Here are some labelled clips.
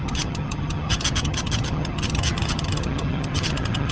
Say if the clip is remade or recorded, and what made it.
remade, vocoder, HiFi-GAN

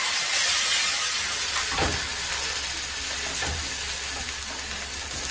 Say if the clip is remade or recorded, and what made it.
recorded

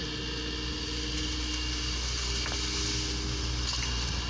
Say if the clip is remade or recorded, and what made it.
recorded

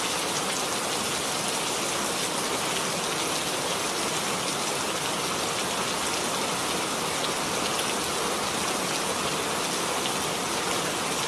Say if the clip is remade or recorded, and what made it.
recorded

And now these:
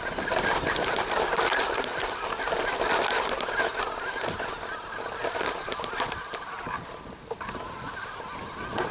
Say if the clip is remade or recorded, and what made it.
recorded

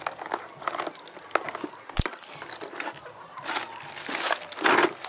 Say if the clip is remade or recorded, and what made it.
recorded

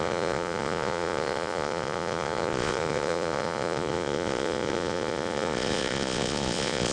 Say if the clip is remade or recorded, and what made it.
remade, vocoder, Vocos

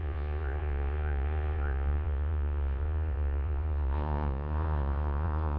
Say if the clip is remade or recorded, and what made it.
remade, vocoder, Vocos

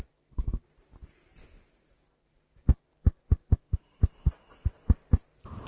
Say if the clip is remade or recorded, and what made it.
recorded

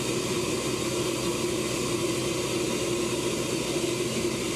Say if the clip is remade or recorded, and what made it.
recorded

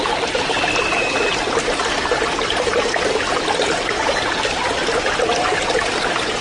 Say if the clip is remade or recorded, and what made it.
recorded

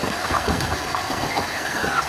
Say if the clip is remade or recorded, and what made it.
remade, codec, SNAC